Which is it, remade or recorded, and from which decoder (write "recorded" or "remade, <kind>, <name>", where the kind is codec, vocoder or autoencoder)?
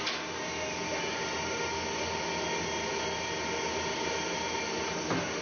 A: recorded